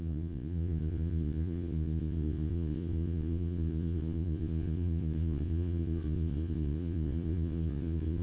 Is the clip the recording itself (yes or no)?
no